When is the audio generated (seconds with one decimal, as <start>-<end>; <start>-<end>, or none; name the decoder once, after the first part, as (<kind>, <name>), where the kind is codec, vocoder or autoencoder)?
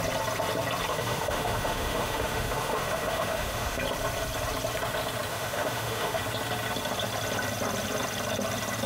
0.9-3.8 (autoencoder, DAC-VAE); 5.3-6.2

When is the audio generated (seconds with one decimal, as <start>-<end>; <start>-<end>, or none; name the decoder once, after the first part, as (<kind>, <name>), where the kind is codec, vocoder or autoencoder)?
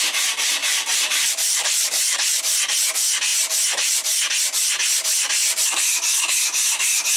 0.6-2.4 (vocoder, BigVGAN v2)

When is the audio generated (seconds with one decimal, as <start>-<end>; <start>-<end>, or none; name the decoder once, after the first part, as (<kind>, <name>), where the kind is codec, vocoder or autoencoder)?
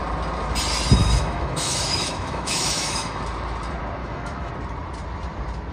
1.0-3.2 (autoencoder, DAC-VAE); 4.0-4.5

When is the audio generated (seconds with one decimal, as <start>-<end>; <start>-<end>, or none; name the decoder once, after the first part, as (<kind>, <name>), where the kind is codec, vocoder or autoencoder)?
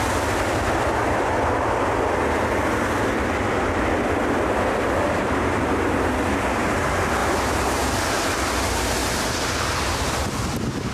7.2-8.0 (vocoder, BigVGAN v2); 9.0-10.0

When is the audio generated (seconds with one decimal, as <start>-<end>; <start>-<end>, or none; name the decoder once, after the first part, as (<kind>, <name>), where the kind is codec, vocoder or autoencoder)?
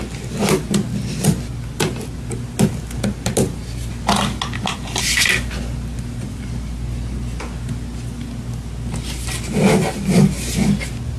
none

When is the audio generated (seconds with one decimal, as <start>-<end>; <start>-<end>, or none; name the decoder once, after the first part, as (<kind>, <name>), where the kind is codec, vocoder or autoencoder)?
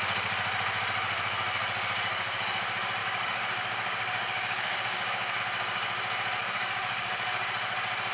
3.0-5.4 (codec, DAC); 6.4-7.1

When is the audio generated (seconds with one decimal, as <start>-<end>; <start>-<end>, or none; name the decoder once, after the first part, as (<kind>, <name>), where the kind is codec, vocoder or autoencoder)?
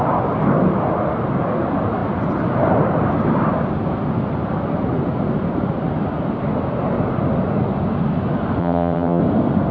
8.6-9.2 (vocoder, HiFi-GAN)